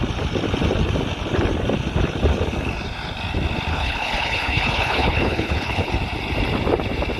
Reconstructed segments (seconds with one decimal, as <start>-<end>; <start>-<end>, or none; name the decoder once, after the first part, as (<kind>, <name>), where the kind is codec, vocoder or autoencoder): 3.7-5.9 (codec, HILCodec)